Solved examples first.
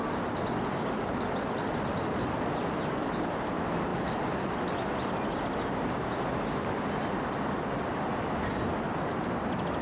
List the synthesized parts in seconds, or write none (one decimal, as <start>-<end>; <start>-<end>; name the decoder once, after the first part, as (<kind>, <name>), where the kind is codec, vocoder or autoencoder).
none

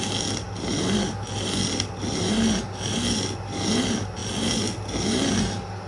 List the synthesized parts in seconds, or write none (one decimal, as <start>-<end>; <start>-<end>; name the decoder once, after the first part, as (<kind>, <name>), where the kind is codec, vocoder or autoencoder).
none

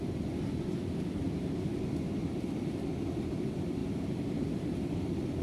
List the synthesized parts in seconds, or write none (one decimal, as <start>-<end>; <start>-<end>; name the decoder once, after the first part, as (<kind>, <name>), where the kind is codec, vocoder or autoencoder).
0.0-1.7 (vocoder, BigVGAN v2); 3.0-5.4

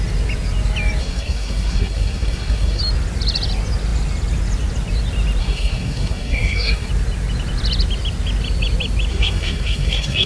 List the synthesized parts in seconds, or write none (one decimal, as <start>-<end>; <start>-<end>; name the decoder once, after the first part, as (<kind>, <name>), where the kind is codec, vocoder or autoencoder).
1.0-2.8 (codec, SNAC); 5.4-6.9; 9.1-10.3

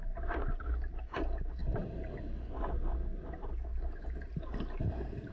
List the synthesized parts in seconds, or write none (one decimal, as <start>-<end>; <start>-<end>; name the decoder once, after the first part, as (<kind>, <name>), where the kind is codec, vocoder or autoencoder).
none